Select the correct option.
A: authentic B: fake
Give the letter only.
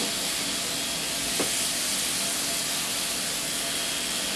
A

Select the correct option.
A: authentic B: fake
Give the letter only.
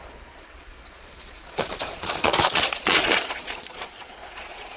B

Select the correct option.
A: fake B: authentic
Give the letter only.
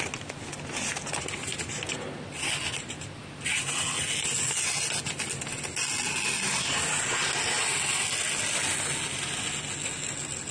B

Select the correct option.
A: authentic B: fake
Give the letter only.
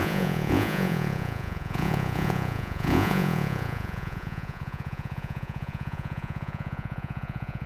B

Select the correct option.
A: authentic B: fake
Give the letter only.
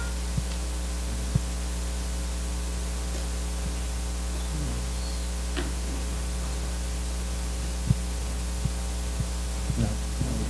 A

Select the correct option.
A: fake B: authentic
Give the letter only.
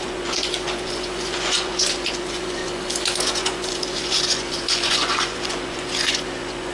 A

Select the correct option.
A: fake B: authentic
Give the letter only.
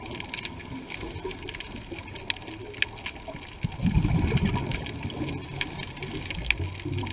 B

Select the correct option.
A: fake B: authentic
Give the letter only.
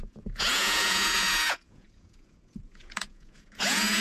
A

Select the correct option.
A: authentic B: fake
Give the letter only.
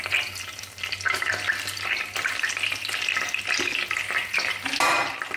A